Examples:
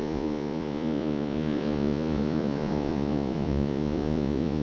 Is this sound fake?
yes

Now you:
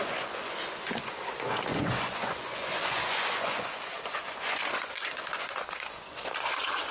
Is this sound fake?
yes